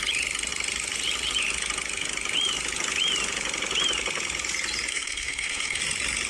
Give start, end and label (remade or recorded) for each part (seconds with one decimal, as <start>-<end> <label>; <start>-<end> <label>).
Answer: 0.0-4.9 recorded; 4.9-5.8 remade; 5.8-6.3 recorded